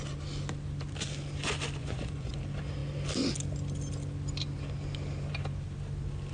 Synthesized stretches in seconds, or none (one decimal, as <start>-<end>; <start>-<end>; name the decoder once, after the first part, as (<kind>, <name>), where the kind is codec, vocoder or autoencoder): 1.8-2.4 (vocoder, Vocos)